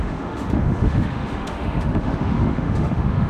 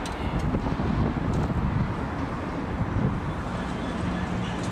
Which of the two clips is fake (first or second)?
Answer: first